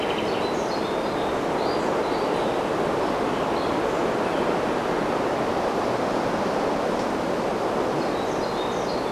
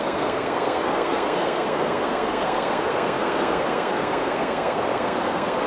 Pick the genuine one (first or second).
first